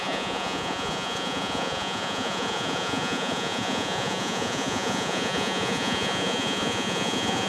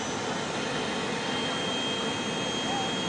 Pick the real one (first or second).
second